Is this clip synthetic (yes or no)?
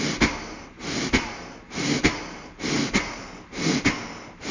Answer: no